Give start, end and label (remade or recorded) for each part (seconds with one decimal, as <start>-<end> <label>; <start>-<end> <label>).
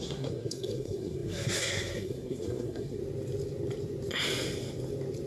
0.0-3.0 remade; 3.0-5.3 recorded